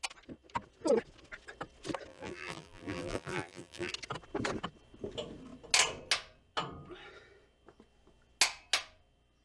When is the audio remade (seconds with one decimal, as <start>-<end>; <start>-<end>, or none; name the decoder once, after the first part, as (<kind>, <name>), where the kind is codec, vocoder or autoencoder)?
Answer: 2.1-3.9 (vocoder, BigVGAN v2)